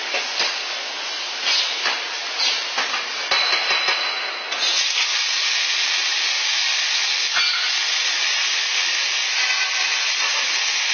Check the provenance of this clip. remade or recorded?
recorded